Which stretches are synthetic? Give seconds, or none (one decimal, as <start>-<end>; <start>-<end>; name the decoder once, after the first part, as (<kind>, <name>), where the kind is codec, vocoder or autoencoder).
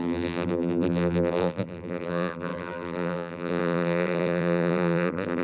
0.0-5.4 (vocoder, BigVGAN v2)